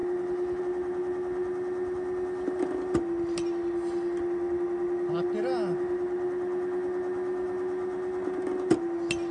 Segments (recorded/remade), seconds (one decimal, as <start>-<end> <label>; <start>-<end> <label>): 0.0-9.3 recorded